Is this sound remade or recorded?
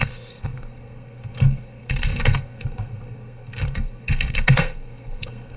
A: remade